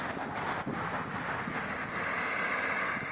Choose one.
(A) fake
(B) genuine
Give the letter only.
A